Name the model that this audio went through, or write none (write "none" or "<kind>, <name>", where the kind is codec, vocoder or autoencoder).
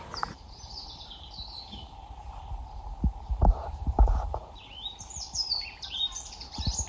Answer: vocoder, BigVGAN v2